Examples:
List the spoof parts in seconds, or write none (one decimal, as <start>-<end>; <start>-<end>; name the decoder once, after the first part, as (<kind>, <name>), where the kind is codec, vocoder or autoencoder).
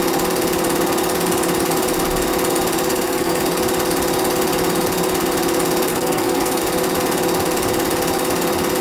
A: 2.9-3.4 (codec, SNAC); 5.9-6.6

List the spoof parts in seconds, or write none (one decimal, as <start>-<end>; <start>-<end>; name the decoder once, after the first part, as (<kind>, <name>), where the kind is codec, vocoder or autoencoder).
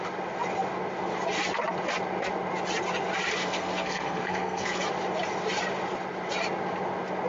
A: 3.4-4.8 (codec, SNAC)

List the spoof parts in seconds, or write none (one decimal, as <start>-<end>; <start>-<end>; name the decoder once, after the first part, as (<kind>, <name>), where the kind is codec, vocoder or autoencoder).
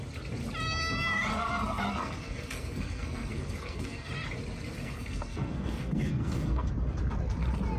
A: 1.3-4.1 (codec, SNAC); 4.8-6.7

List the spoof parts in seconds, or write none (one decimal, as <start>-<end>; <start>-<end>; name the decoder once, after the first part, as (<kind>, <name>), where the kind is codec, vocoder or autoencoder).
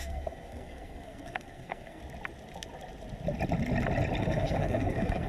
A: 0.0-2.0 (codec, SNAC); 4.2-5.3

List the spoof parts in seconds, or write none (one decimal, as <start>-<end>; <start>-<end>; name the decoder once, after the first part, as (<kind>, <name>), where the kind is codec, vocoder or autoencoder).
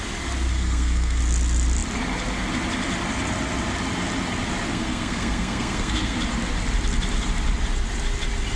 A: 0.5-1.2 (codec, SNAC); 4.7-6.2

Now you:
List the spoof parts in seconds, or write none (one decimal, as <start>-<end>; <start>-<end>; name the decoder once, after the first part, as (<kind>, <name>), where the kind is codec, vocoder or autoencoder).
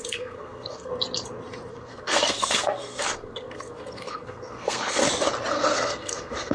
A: 0.0-0.9 (codec, SNAC); 1.7-5.0; 5.5-6.5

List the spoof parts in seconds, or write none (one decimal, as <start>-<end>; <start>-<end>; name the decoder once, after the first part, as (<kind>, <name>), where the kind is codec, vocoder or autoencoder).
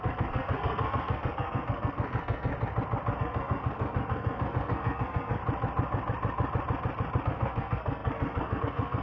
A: 0.0-2.5 (codec, SNAC); 3.2-5.4; 7.2-9.0